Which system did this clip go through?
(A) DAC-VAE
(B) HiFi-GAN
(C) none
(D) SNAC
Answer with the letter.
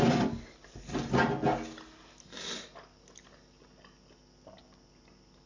C